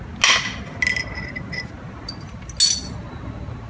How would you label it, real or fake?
real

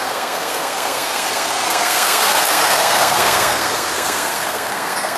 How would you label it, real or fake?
fake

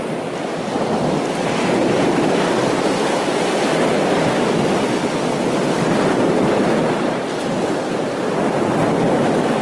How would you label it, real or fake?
real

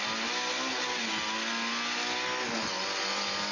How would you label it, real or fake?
real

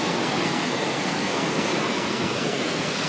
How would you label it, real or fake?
fake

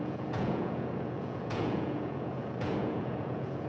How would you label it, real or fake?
fake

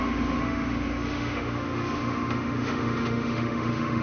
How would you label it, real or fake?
fake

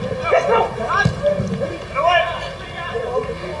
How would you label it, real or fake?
real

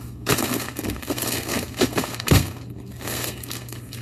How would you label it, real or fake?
fake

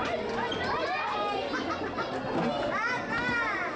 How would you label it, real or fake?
real